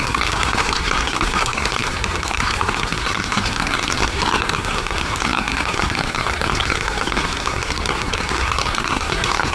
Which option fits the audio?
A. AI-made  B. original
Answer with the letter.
A